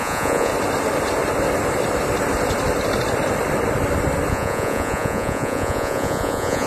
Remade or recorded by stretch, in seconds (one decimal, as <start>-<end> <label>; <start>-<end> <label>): 0.0-0.5 remade; 0.5-4.3 recorded; 4.3-6.7 remade